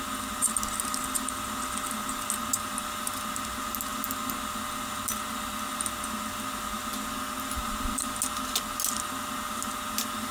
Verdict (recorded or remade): recorded